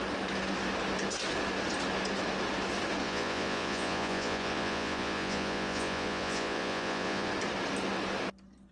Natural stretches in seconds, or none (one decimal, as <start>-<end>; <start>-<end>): 0.0-3.0; 7.3-8.7